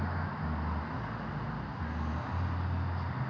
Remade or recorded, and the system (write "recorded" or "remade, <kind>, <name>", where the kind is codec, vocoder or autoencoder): recorded